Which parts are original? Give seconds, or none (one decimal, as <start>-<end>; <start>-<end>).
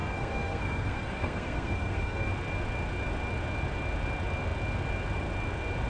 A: 2.3-5.9